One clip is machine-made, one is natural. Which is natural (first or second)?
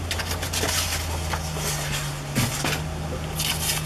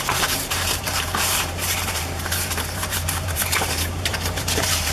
first